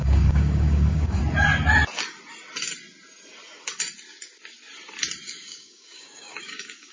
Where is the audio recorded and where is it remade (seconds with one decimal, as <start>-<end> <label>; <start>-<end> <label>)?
0.0-1.2 remade; 1.2-5.3 recorded; 5.3-6.9 remade